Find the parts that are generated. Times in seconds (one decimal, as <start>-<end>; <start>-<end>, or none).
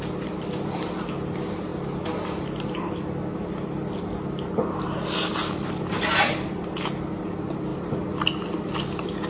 none